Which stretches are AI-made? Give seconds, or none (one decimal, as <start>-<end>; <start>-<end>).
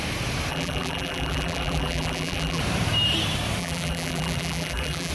0.5-2.6; 3.6-5.1